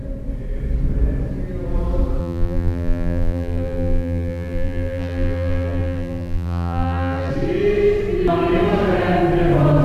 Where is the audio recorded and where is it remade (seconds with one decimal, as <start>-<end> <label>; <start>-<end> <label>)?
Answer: 0.0-2.2 recorded; 2.2-7.3 remade; 7.3-9.8 recorded